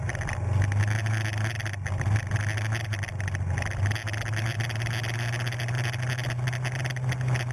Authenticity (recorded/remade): recorded